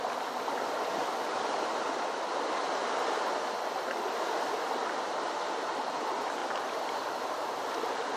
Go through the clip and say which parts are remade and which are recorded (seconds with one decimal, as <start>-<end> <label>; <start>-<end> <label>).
0.0-8.2 recorded